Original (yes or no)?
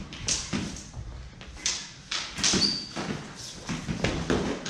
yes